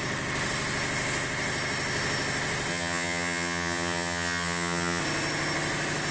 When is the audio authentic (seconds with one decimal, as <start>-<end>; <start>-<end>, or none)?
0.0-2.7; 5.0-6.1